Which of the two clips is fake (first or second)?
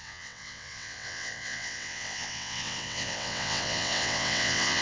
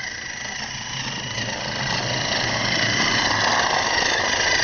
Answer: first